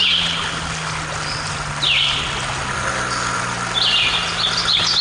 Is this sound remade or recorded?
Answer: recorded